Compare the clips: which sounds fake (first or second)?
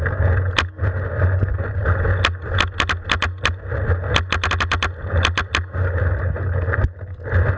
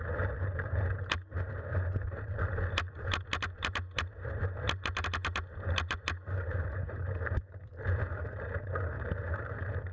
second